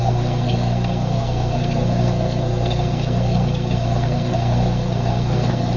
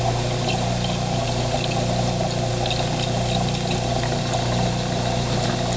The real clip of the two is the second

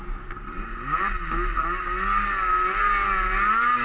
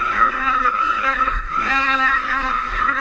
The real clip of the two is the first